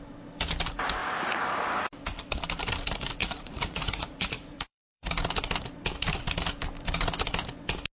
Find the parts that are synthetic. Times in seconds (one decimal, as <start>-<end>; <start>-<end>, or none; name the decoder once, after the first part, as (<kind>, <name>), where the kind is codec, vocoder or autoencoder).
3.2-5.1 (vocoder, Vocos)